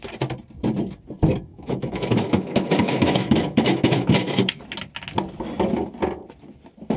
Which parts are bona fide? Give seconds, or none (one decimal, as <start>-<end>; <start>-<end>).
0.0-1.5; 4.6-7.0

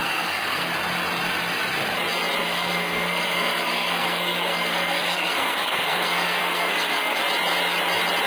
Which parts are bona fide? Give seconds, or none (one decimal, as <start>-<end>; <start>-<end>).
0.7-2.4; 7.2-8.3

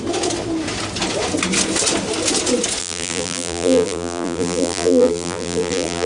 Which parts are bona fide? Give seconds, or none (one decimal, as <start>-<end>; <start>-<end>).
0.0-2.8

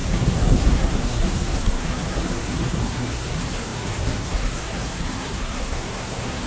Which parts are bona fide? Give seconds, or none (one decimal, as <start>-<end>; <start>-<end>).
none